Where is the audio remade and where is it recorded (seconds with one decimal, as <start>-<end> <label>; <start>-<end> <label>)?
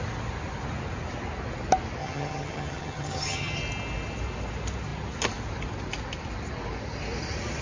0.0-2.0 recorded; 2.0-3.6 remade; 3.6-7.6 recorded